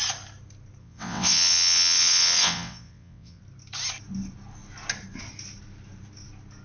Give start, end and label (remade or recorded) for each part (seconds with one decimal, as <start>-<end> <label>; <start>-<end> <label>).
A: 0.0-0.8 recorded; 0.8-3.4 remade; 3.4-6.6 recorded